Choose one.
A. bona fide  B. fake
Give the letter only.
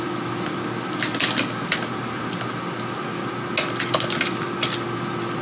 A